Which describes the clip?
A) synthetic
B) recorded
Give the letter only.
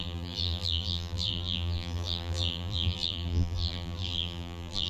A